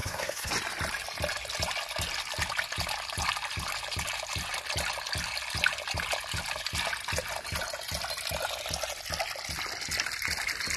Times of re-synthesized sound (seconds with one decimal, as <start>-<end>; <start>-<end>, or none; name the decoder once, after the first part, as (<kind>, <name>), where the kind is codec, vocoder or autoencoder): 0.0-0.5 (codec, SNAC)